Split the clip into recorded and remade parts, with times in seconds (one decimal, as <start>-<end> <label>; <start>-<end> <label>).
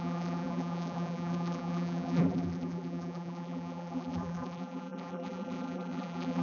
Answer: 0.0-6.4 remade